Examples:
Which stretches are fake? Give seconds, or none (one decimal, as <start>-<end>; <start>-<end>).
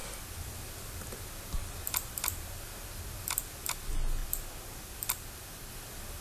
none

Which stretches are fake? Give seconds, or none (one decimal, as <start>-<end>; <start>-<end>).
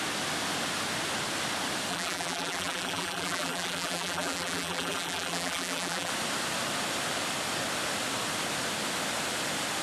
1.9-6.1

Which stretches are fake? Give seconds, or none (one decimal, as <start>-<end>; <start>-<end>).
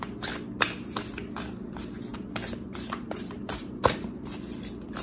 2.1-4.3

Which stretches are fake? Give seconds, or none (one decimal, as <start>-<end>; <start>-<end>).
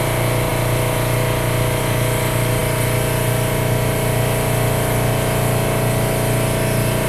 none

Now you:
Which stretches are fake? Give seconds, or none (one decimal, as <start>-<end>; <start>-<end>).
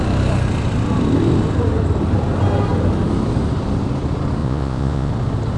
4.4-5.1